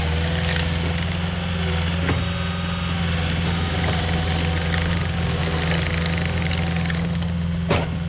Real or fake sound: real